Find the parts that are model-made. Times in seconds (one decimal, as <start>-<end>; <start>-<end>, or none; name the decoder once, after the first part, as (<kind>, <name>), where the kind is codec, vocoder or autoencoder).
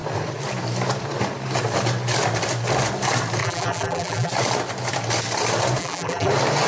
3.4-4.3 (vocoder, BigVGAN v2); 5.8-6.3